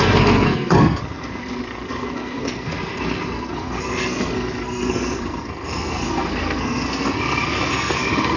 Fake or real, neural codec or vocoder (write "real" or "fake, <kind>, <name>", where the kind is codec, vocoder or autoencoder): fake, codec, SNAC